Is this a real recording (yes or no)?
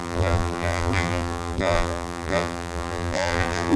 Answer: no